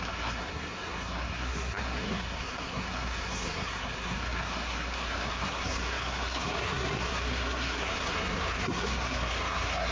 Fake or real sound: fake